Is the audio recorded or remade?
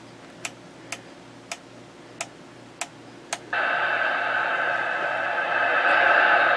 recorded